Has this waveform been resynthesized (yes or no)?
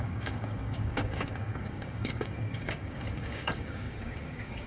yes